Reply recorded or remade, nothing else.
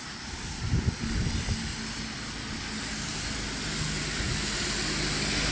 recorded